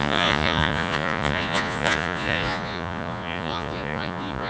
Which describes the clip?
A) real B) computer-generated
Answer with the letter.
B